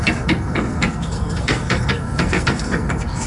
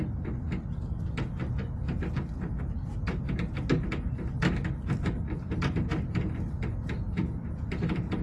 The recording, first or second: second